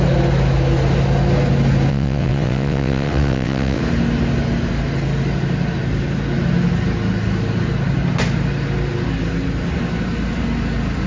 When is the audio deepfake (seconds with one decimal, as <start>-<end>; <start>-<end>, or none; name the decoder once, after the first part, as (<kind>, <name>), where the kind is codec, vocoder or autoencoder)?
1.9-3.8 (vocoder, WaveNeXt)